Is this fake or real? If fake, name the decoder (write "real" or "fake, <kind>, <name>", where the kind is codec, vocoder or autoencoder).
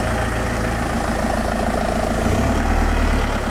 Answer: real